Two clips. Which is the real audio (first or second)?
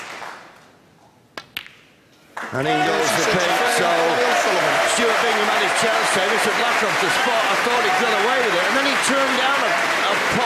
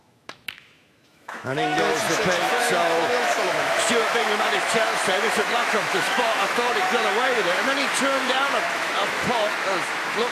first